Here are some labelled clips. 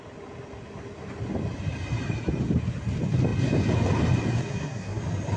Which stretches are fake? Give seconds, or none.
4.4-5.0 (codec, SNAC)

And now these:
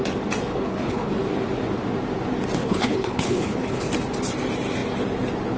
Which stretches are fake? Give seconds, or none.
0.5-1.1 (codec, HILCodec); 2.6-3.9

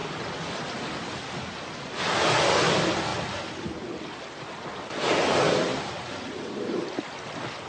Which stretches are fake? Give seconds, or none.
none

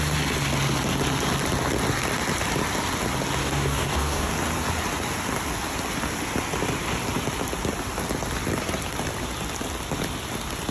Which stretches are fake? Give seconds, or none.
3.4-4.3 (codec, DAC)